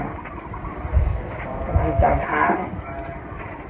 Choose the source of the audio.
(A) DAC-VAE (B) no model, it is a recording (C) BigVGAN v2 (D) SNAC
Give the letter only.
B